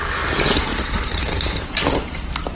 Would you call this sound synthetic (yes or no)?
no